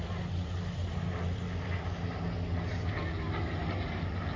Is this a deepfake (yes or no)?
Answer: no